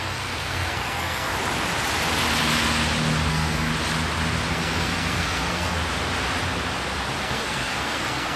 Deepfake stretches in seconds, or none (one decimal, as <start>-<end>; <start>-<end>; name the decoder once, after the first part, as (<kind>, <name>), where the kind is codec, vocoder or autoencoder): 0.0-1.3 (codec, SNAC); 3.3-3.7; 4.5-5.8; 7.2-8.4